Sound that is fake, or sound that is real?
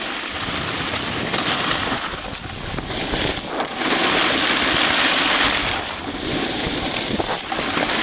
real